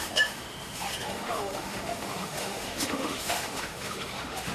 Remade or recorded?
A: remade